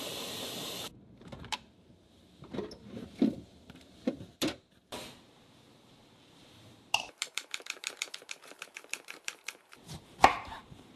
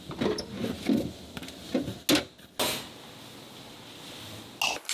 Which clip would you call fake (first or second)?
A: first